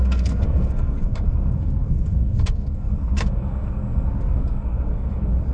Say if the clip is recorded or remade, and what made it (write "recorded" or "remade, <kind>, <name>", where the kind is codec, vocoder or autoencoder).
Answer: remade, codec, SNAC